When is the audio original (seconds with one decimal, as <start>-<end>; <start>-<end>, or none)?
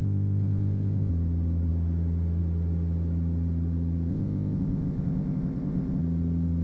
1.1-4.1; 6.0-6.6